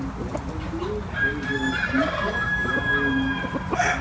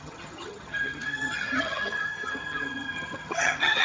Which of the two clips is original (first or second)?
first